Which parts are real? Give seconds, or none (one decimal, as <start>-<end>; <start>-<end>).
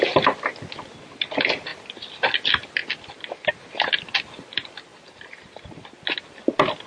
0.0-1.7; 2.3-2.8; 3.5-4.9; 6.2-6.9